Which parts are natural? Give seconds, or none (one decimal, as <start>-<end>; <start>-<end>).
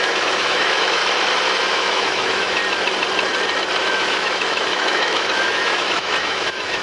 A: 1.0-1.7; 2.6-3.8